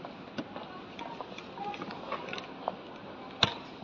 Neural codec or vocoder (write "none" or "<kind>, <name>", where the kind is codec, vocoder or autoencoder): none